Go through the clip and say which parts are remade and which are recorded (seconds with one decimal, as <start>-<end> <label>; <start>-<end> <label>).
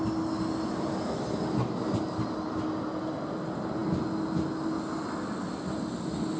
0.0-6.4 recorded